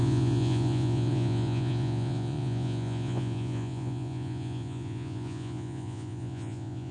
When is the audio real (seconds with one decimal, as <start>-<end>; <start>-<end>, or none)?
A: none

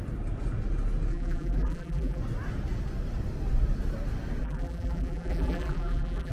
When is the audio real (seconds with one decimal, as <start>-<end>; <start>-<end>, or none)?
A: 0.0-1.1; 2.2-4.4

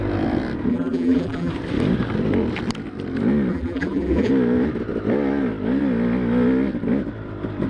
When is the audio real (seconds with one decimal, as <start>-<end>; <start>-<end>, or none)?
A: 0.0-0.7; 1.5-3.5; 4.3-7.7

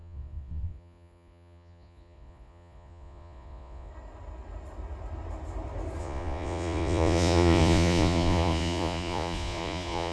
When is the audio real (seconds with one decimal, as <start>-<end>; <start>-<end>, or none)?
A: 3.9-6.0

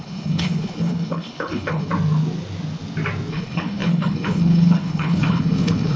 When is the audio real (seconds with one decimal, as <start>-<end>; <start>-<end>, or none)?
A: 1.9-3.3

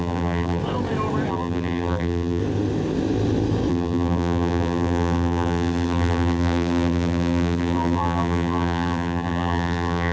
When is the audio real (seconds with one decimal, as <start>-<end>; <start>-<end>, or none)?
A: 0.6-1.3; 2.4-3.7

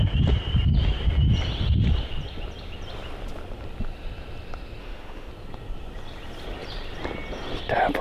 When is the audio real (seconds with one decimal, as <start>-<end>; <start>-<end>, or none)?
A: 0.0-4.8; 5.3-8.0

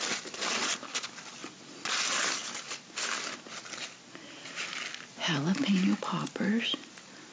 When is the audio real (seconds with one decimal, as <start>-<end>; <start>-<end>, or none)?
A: 0.0-7.3